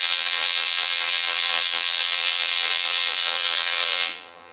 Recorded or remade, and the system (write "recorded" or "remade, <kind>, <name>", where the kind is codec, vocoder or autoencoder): remade, vocoder, BigVGAN v2